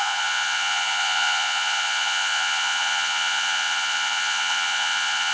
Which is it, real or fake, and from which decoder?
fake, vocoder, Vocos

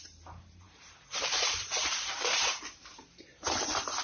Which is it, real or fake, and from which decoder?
fake, vocoder, BigVGAN v2